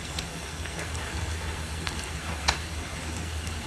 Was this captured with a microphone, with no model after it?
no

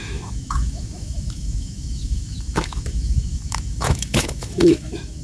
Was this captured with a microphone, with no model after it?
no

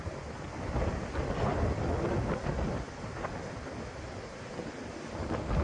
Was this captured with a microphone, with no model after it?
yes